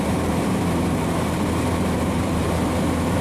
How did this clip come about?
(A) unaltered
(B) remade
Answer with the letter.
B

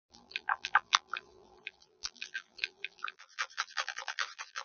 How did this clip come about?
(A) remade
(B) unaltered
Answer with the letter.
A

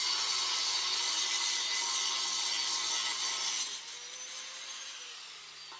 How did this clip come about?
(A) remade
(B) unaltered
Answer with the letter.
B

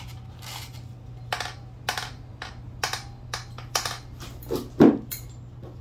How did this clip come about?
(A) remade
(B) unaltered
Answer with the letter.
B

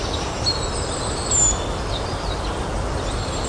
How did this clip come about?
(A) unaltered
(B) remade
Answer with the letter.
A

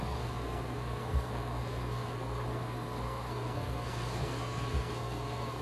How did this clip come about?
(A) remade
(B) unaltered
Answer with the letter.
A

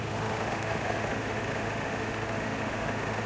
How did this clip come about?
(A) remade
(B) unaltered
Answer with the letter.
A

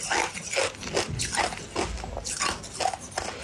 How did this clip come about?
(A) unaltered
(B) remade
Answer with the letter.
A